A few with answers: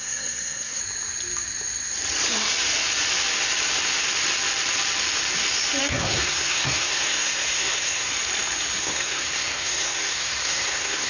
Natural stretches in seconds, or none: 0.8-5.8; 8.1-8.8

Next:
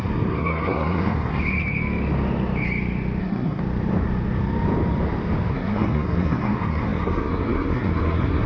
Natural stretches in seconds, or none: 1.4-3.2; 3.6-5.5